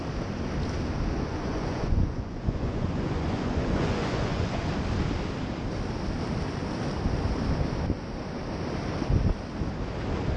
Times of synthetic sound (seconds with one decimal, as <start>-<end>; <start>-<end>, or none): 1.3-4.7